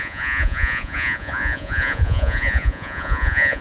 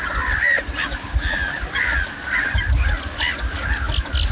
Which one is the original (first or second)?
second